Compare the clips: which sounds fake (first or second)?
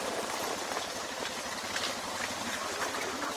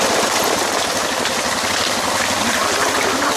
first